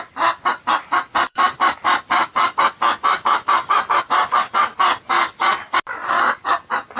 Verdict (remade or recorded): recorded